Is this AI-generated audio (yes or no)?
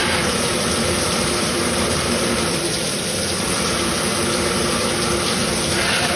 yes